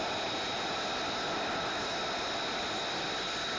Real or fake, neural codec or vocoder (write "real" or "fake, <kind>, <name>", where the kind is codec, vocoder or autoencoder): real